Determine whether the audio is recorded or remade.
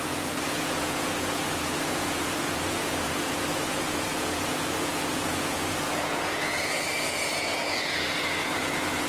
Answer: remade